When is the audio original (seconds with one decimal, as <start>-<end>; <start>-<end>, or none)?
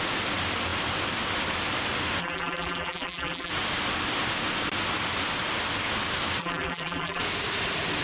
0.0-2.2; 3.5-6.4; 7.2-8.0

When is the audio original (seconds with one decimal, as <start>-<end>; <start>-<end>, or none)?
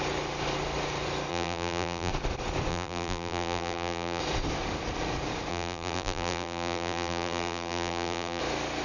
0.0-1.3; 2.1-2.7; 4.2-5.5; 8.4-8.8